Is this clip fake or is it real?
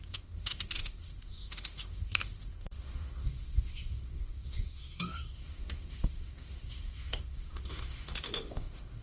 fake